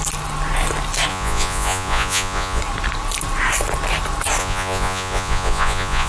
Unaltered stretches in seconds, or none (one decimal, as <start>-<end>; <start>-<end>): 0.0-1.1; 2.6-4.4